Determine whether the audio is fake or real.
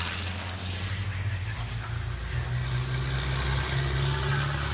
real